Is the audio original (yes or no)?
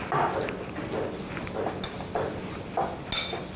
yes